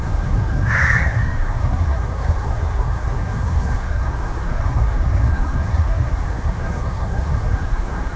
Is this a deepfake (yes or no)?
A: yes